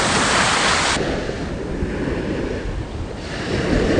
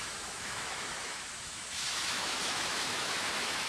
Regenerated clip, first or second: second